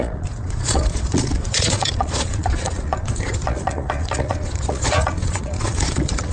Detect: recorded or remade remade